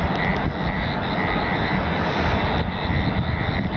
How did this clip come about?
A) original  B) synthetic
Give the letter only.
A